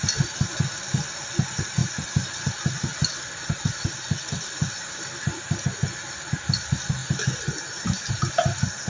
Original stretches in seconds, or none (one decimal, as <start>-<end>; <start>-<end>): 0.0-8.9